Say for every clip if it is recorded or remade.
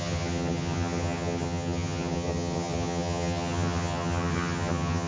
remade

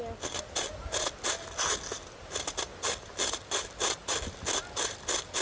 recorded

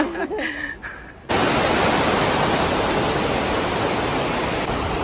recorded